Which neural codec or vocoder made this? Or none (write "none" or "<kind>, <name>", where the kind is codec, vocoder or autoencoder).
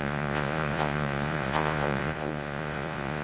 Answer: vocoder, Vocos